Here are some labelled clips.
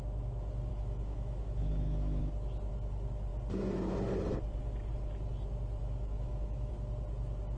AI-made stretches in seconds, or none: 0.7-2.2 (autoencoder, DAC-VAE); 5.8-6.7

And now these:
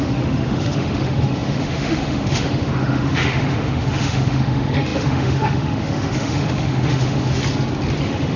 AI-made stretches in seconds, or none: 0.0-7.4 (autoencoder, DAC-VAE); 8.0-8.4

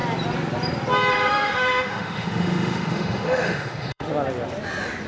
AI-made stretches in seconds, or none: 1.1-4.1 (autoencoder, DAC-VAE)

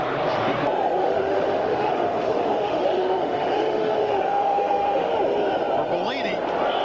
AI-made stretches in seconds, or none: 1.0-5.1 (autoencoder, DAC-VAE)

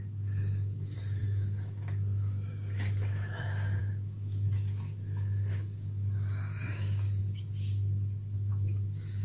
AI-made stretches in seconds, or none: 0.0-7.2 (autoencoder, DAC-VAE); 8.5-9.2

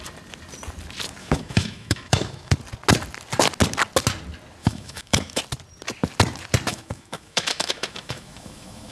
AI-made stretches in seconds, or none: 1.2-2.5 (autoencoder, DAC-VAE); 4.6-5.4; 6.7-8.9